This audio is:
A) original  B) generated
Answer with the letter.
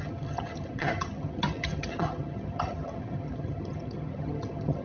B